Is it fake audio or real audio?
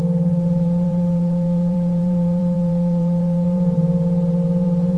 fake